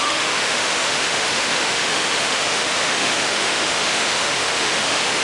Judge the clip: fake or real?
fake